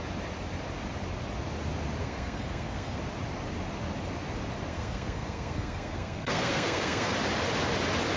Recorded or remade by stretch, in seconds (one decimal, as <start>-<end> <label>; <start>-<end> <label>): 0.0-2.0 recorded; 2.0-3.0 remade; 3.0-4.7 recorded; 4.7-7.1 remade; 7.1-8.2 recorded